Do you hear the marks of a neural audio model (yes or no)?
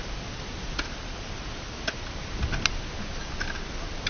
no